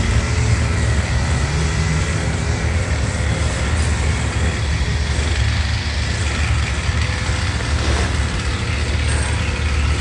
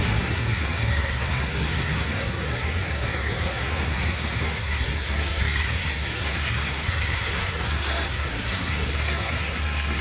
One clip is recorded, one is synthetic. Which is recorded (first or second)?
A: first